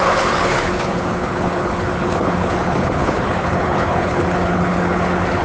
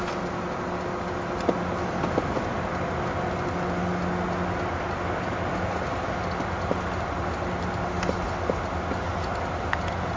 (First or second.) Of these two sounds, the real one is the second